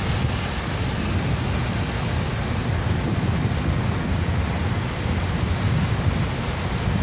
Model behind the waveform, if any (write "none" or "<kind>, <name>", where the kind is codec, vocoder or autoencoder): none